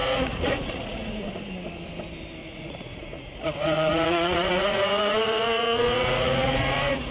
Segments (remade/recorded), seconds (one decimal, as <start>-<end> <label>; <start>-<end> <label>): 0.0-1.5 remade; 1.5-2.4 recorded; 2.4-7.1 remade